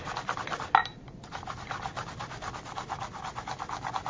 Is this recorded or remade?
recorded